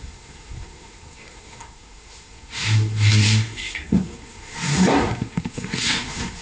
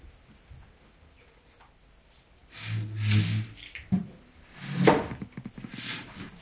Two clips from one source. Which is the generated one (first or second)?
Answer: first